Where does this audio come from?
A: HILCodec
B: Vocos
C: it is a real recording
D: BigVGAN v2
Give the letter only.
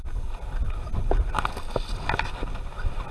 C